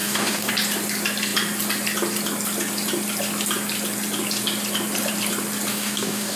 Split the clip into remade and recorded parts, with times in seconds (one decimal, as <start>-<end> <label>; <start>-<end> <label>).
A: 0.0-0.5 remade; 0.5-5.7 recorded; 5.7-6.4 remade